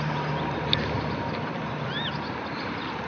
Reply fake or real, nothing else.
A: real